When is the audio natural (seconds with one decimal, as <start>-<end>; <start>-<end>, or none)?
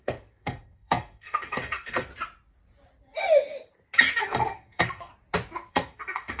2.1-4.2; 5.1-5.7